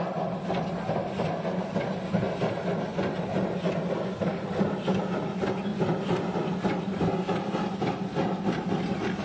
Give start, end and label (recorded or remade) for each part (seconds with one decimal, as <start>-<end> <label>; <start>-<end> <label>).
0.0-9.2 recorded